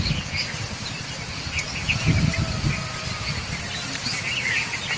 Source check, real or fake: real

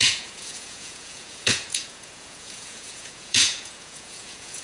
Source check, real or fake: fake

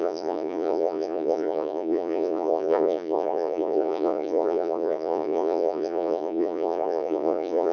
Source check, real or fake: fake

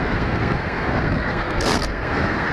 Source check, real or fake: fake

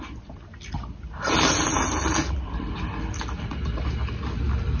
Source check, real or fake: real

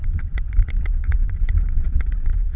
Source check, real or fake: fake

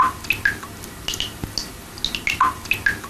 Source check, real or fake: real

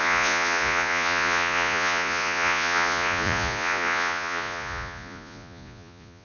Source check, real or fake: fake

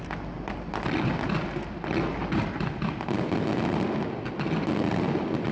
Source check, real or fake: real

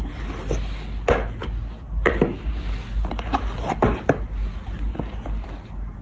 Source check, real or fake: real